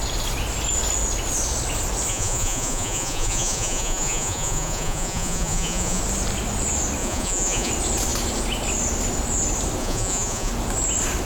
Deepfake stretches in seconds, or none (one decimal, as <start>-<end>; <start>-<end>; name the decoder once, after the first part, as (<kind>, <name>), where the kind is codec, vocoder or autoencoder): 2.1-6.0 (vocoder, Vocos); 7.0-7.7; 9.8-10.5